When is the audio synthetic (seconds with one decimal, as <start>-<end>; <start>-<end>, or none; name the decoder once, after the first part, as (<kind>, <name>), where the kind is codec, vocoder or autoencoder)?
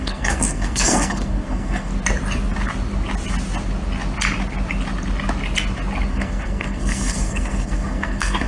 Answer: 0.0-1.9 (codec, SNAC); 6.1-8.5